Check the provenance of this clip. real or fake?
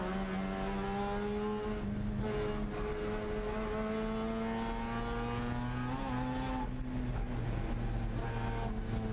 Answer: real